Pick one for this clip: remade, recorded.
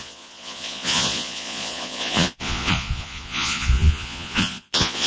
remade